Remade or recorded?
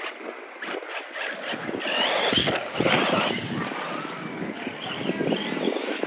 recorded